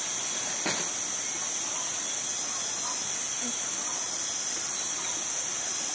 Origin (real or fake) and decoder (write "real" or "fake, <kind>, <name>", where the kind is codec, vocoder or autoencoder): real